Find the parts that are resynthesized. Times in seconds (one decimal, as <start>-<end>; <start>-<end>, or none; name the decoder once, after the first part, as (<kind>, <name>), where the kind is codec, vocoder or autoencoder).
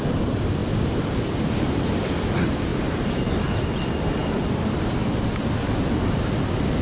0.0-0.6 (vocoder, BigVGAN v2); 1.8-6.8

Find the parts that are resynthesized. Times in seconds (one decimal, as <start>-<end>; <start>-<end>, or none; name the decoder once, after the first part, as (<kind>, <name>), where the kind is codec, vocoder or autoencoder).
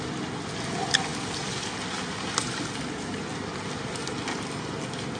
none